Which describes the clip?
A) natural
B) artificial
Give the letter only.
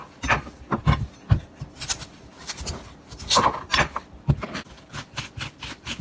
A